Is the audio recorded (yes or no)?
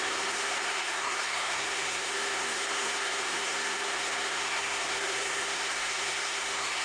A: no